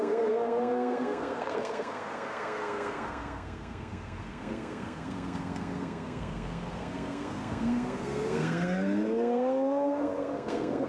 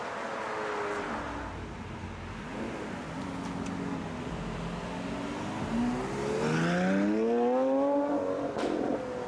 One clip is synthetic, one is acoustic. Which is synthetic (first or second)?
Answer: first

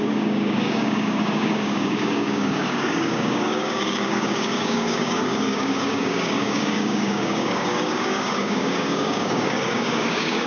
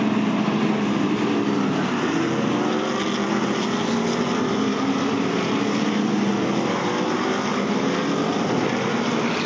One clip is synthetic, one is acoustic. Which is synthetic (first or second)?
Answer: first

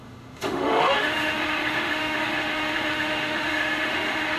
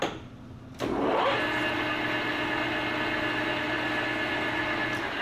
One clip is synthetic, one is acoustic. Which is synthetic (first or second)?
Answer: first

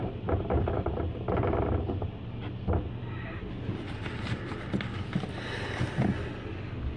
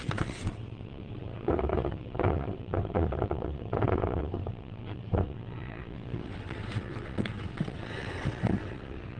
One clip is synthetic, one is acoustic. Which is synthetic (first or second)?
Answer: second